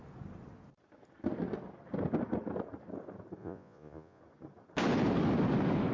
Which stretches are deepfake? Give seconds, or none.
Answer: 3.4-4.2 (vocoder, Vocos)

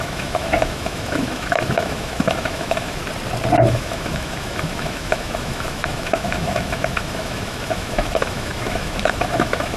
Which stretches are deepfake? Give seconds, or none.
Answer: 0.0-3.0 (autoencoder, DAC-VAE); 3.7-9.8

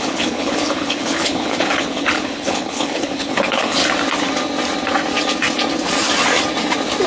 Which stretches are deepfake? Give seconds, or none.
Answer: 0.0-3.8 (codec, HILCodec)